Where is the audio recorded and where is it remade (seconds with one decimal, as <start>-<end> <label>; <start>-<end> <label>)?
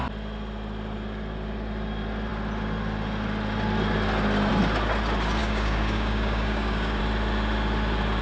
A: 0.0-5.4 recorded; 5.4-7.0 remade; 7.0-8.2 recorded